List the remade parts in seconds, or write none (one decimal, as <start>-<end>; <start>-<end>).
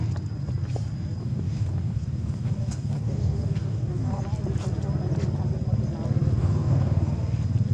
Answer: 1.2-4.2; 6.4-7.1